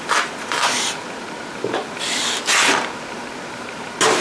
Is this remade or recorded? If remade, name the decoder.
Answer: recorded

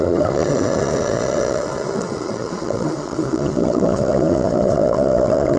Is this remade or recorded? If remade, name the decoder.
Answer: remade, vocoder, Vocos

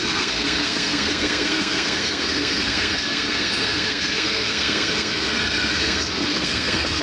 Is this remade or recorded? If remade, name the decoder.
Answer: remade, codec, SNAC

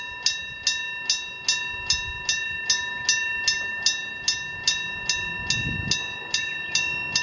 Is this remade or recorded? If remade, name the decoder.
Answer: recorded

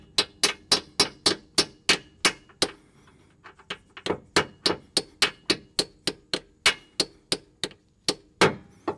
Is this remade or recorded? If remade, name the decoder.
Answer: recorded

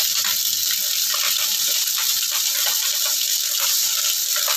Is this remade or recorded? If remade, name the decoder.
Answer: remade, vocoder, BigVGAN v2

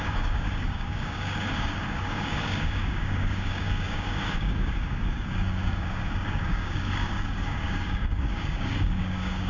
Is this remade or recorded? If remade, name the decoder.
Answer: remade, codec, DAC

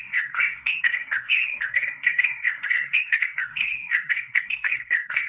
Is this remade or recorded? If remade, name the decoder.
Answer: remade, codec, SNAC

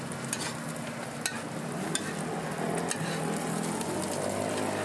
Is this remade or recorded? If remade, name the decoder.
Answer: recorded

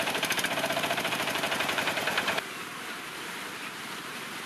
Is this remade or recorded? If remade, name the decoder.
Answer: remade, vocoder, BigVGAN v2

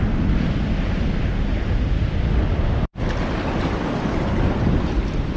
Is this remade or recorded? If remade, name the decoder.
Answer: recorded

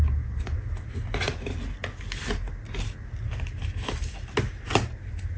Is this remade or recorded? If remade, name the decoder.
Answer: recorded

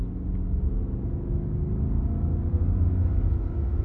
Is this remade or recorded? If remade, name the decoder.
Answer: recorded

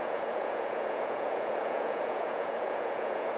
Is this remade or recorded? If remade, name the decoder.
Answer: remade, vocoder, Vocos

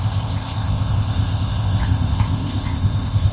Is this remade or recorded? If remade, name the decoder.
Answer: remade, codec, ZipCodec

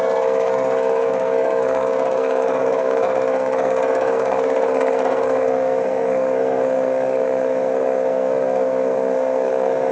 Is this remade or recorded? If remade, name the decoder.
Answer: remade, codec, SNAC